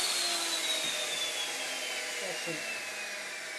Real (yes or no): yes